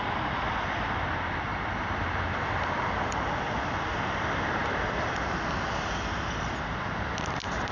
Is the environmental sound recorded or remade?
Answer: recorded